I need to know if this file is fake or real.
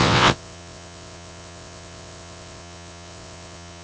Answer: fake